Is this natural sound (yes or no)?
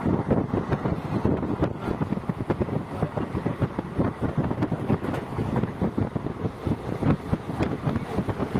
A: yes